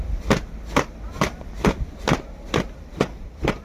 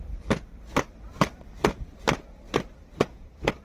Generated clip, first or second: second